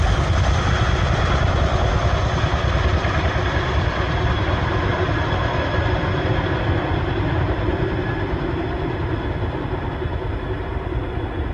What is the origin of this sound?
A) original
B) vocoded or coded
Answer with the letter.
A